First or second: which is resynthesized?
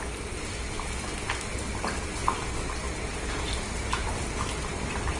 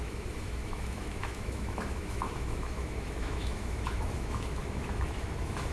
second